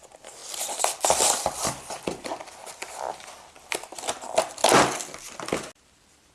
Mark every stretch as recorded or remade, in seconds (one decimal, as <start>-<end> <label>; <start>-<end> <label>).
0.0-6.3 recorded